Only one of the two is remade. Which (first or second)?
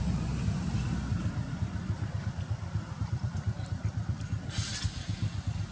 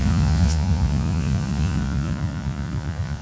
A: second